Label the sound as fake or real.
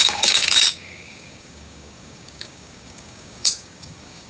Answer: fake